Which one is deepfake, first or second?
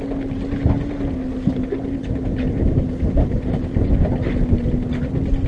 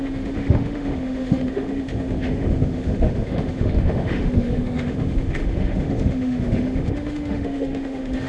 second